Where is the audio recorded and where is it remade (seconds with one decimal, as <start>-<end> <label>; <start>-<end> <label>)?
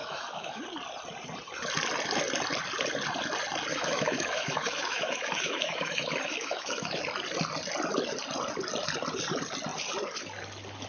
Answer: 0.0-0.6 remade; 0.6-3.7 recorded; 3.7-7.0 remade; 7.0-10.9 recorded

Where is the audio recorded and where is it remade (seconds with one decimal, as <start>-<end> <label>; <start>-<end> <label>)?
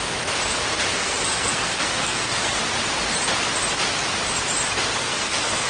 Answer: 0.0-0.9 recorded; 0.9-2.6 remade; 2.6-5.0 recorded; 5.0-5.7 remade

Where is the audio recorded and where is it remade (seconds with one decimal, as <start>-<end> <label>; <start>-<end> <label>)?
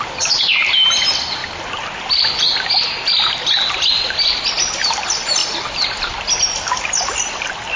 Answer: 0.0-5.4 recorded; 5.4-7.3 remade; 7.3-7.8 recorded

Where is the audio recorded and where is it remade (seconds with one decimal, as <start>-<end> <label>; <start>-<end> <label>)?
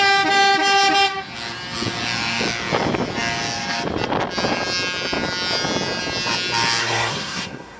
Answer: 0.0-6.8 recorded; 6.8-7.8 remade